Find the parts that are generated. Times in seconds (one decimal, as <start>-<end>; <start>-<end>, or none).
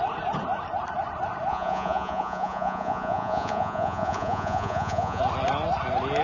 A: 1.5-5.2